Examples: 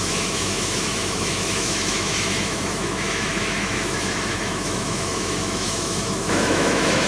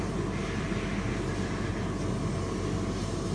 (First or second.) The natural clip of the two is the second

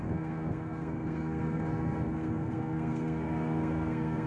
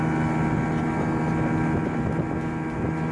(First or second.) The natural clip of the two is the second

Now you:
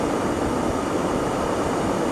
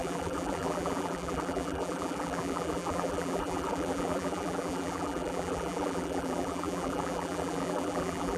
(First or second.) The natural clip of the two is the first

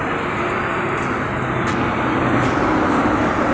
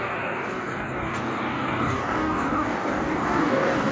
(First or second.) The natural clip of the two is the first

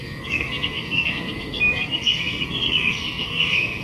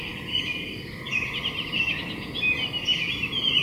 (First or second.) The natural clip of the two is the second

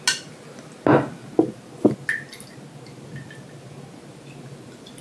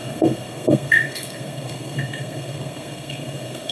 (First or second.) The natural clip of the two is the first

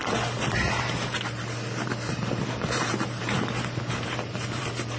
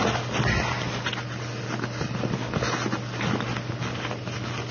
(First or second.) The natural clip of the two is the second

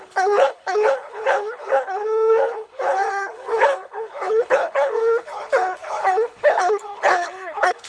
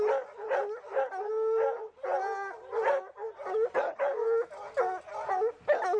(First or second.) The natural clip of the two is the second